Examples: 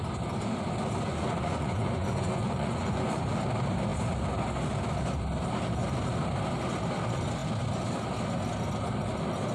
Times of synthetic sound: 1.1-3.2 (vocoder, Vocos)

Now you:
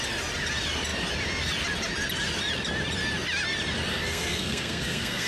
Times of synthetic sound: 3.9-5.3 (codec, SNAC)

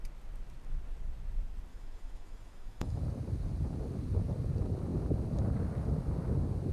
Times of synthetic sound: 1.7-3.0 (autoencoder, DAC-VAE)